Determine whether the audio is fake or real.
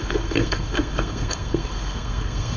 fake